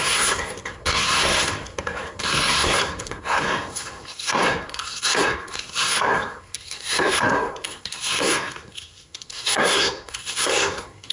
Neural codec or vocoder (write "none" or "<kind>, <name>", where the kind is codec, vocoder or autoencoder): codec, SNAC